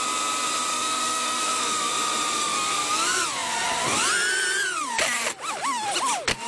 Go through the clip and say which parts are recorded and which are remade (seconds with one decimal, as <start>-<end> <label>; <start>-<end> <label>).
0.0-0.7 recorded; 0.7-1.9 remade; 1.9-6.5 recorded